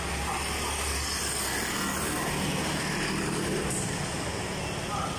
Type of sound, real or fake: real